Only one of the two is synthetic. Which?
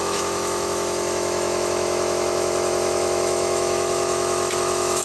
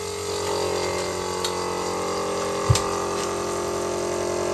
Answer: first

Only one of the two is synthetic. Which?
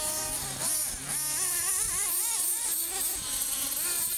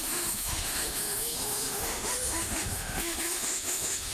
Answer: second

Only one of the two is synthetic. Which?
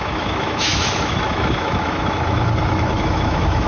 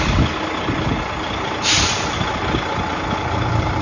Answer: first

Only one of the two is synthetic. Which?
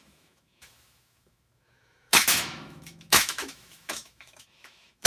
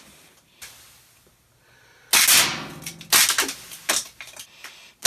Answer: first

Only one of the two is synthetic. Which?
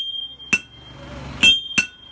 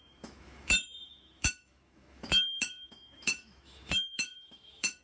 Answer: second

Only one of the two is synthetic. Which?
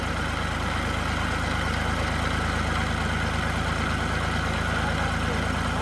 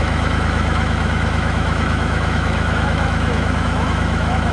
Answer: second